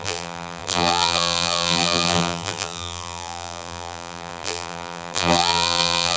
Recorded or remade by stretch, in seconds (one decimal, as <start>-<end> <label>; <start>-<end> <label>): 0.0-6.2 remade